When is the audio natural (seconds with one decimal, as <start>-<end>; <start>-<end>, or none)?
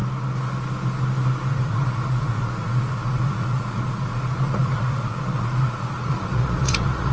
0.0-1.5